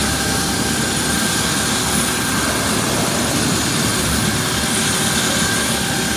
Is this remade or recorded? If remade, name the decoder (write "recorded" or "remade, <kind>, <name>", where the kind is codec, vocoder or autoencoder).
recorded